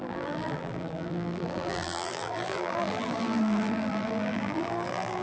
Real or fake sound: fake